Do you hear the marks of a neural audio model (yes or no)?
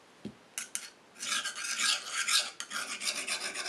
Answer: no